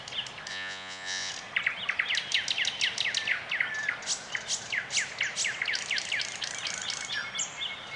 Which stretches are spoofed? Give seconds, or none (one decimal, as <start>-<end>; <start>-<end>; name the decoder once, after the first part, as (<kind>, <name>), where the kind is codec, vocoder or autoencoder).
0.5-1.3 (vocoder, Vocos)